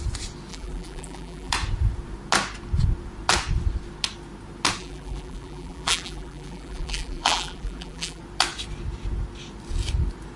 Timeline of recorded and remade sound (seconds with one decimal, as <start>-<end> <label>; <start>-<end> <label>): 0.0-0.5 recorded; 0.5-1.5 remade; 1.5-4.8 recorded; 4.8-8.2 remade; 8.2-10.4 recorded